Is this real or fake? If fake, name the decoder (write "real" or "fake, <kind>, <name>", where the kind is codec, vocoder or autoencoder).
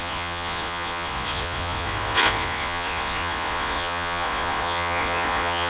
fake, vocoder, Vocos